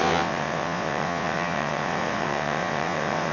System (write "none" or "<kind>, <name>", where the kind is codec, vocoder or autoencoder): vocoder, WaveNeXt